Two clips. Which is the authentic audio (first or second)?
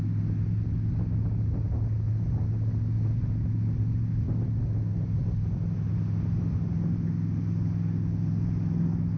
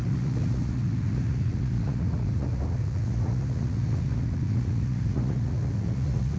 first